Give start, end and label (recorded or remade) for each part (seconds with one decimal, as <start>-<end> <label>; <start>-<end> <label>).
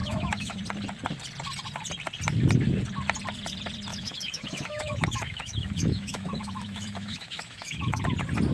0.0-0.6 remade; 0.6-3.9 recorded; 3.9-8.0 remade; 8.0-8.5 recorded